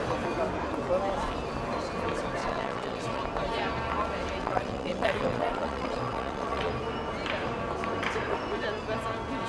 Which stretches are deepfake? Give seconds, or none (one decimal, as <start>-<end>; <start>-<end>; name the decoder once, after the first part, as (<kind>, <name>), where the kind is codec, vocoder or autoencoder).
2.4-3.2 (vocoder, WaveNeXt); 4.4-6.7